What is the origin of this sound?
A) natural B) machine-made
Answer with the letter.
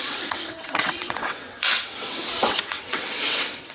B